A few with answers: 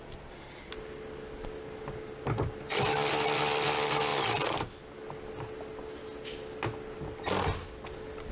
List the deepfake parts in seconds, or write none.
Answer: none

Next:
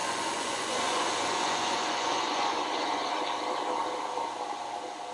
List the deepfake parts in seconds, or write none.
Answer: 0.0-3.1 (vocoder, Vocos)

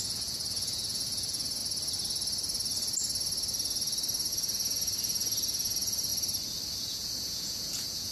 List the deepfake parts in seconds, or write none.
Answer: 0.0-1.6 (vocoder, Vocos); 4.3-6.1; 6.8-8.1

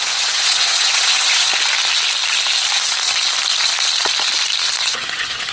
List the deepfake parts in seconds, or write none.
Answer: 0.0-1.5 (vocoder, Vocos); 4.8-5.5

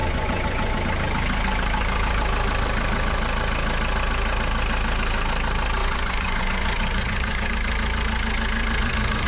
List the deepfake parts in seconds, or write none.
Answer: 0.0-0.8 (vocoder, Vocos); 5.8-7.5; 8.8-9.3

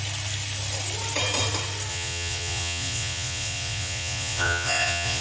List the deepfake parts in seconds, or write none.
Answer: 1.9-5.2 (vocoder, Vocos)

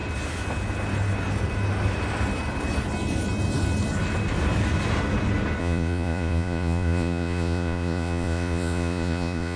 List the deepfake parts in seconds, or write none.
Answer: 5.6-9.6 (vocoder, Vocos)

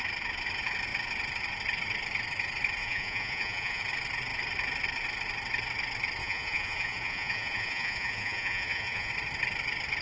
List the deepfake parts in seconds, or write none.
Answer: 2.8-3.8 (vocoder, Vocos); 6.2-9.1